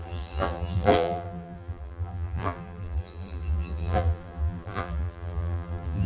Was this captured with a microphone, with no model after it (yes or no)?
no